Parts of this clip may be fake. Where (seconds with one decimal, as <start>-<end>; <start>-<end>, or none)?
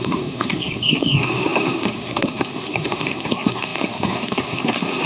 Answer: 0.0-5.1